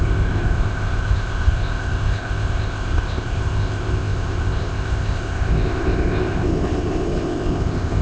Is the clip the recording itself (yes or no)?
no